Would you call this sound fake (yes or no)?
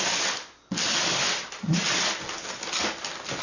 no